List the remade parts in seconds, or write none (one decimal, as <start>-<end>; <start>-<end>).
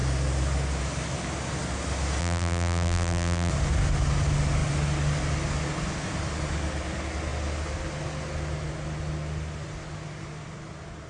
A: 2.2-3.5